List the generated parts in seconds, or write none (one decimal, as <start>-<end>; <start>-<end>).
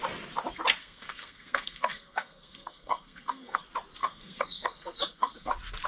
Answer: 0.8-3.6; 4.0-5.5